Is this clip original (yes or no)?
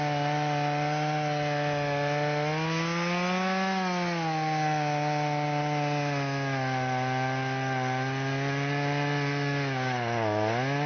yes